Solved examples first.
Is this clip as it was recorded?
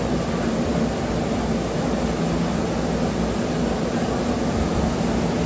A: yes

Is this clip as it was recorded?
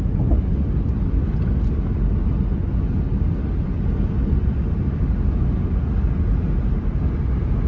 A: yes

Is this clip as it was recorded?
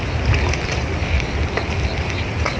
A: yes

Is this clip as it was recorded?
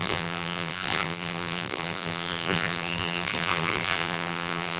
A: no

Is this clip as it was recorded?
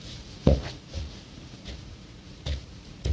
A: no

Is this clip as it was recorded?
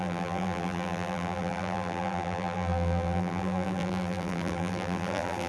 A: no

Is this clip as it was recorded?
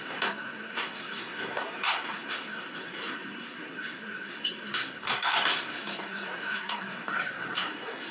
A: no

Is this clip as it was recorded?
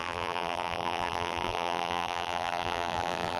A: no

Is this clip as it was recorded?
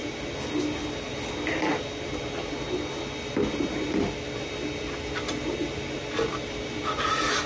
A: yes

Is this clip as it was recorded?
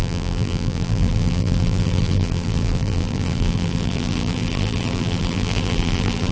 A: no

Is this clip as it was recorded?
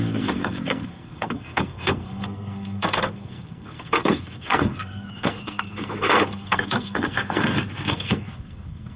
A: no